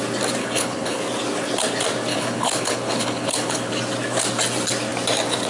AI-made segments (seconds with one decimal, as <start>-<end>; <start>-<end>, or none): 0.4-1.0; 2.1-3.7